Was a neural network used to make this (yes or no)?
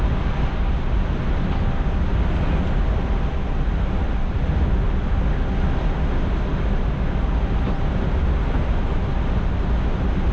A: no